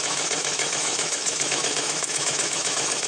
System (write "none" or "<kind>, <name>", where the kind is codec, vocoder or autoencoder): autoencoder, DAC-VAE